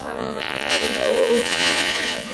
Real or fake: fake